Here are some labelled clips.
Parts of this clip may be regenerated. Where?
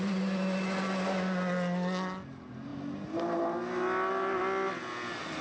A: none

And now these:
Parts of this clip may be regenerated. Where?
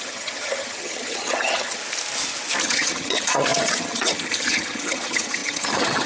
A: 0.0-1.8 (vocoder, HiFi-GAN); 2.6-6.1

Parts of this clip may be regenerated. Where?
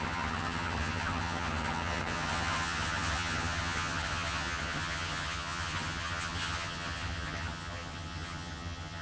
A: 0.0-9.0 (vocoder, HiFi-GAN)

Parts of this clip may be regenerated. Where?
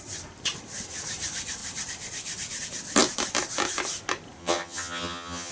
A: 4.4-5.5 (vocoder, HiFi-GAN)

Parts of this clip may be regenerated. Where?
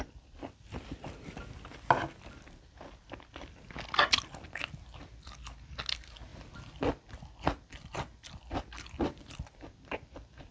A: none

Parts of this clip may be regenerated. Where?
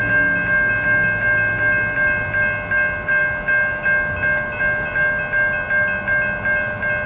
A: none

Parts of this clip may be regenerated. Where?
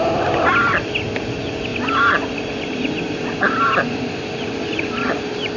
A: none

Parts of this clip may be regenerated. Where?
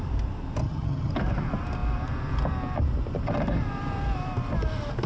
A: 0.6-1.1 (vocoder, HiFi-GAN)